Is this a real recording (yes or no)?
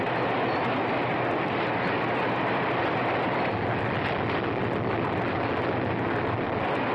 yes